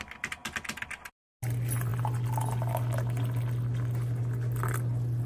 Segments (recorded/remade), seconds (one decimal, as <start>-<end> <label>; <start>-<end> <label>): 0.0-5.3 recorded